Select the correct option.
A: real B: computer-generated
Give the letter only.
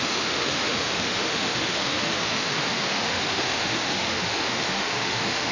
B